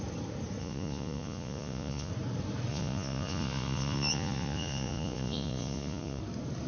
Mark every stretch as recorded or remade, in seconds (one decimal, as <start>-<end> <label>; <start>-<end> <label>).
0.0-0.6 recorded; 0.6-2.1 remade; 2.1-2.7 recorded; 2.7-6.2 remade; 6.2-6.7 recorded